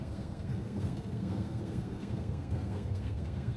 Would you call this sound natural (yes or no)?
no